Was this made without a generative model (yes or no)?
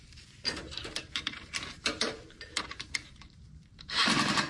no